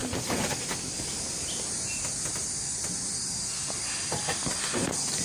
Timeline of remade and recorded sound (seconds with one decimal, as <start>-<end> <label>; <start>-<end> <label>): 0.0-5.2 recorded